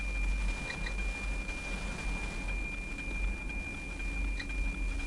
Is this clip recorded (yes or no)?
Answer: yes